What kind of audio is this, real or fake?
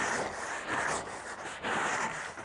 real